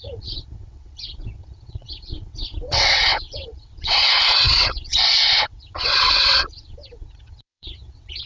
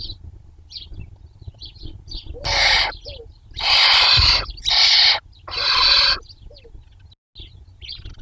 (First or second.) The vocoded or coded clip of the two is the first